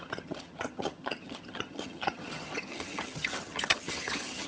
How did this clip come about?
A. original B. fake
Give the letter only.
B